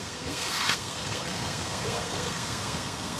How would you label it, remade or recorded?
remade